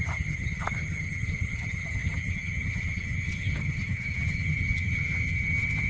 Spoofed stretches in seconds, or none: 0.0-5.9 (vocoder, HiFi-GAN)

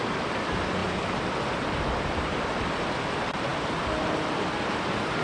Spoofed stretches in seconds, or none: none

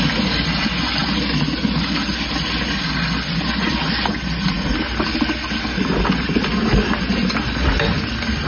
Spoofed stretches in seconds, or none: none